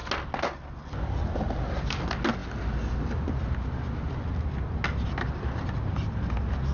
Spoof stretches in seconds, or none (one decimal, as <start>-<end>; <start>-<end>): none